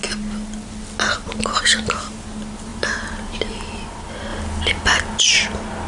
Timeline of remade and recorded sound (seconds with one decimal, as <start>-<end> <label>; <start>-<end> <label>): 0.0-2.7 recorded; 2.7-3.4 remade; 3.4-5.9 recorded